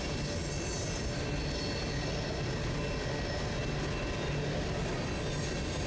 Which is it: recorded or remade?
recorded